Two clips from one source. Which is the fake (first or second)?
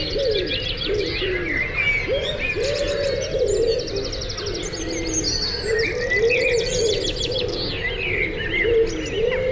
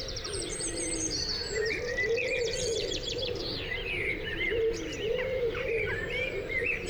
second